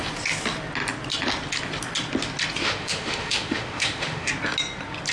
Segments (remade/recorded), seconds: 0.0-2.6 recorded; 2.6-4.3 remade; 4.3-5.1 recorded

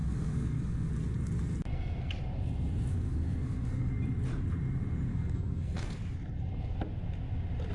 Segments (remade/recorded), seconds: 0.0-0.9 remade; 0.9-1.7 recorded; 1.7-2.2 remade; 2.2-2.9 recorded; 2.9-3.9 remade; 3.9-5.1 recorded; 5.1-6.0 remade; 6.0-7.7 recorded

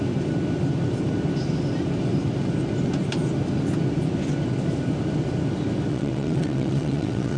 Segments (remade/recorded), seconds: 0.0-5.9 recorded; 5.9-7.4 remade